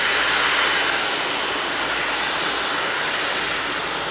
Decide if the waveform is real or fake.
real